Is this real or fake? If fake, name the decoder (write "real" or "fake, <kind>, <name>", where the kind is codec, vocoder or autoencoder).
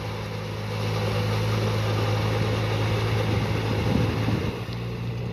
real